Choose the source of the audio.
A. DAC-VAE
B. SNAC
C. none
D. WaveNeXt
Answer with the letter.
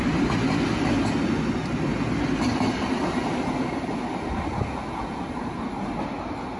C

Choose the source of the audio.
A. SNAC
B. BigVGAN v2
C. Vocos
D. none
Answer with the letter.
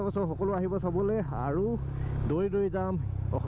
D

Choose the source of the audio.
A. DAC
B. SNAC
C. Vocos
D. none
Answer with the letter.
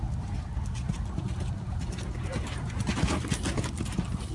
D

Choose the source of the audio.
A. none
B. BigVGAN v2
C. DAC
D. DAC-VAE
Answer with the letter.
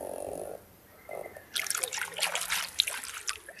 A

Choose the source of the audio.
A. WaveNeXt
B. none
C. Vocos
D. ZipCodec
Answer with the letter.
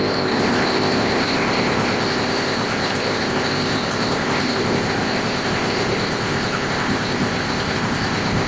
D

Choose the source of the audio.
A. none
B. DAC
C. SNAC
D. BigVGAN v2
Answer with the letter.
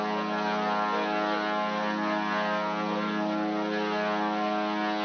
A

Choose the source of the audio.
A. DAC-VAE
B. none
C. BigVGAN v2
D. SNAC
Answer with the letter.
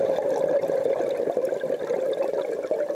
C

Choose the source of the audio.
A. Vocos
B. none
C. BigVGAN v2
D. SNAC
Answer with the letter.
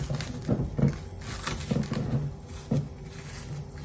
B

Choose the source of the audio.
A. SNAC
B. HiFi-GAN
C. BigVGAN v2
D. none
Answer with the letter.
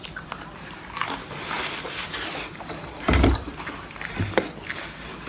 D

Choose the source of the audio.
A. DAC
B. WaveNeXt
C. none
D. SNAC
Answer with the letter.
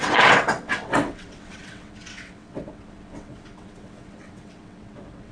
B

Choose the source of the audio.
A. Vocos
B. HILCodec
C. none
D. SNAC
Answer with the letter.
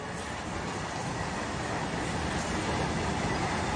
C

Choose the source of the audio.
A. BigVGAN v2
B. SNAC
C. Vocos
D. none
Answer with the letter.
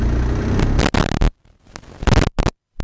D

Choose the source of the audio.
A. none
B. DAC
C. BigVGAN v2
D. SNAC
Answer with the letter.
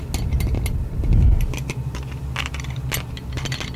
A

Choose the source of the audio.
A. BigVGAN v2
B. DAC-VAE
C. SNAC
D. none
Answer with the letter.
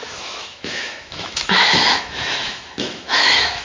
B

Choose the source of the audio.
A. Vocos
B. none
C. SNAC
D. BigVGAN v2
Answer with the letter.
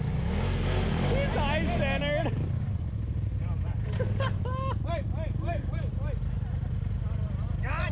B